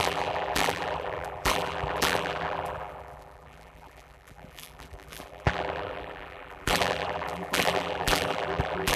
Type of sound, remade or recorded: remade